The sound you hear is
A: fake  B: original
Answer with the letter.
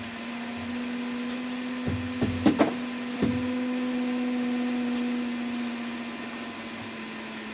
B